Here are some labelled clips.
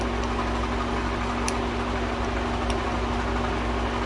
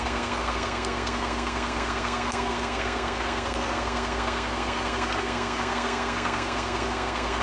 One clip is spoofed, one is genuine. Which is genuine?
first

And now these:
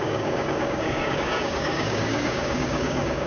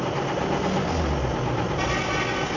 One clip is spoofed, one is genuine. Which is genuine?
second